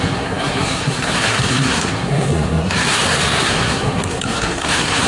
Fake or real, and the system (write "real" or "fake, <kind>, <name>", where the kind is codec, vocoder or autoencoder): fake, codec, SNAC